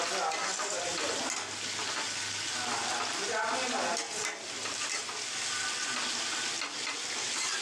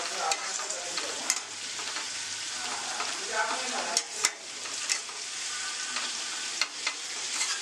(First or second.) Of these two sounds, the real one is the first